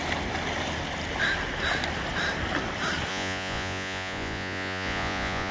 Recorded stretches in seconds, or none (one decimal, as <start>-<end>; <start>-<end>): 0.0-3.1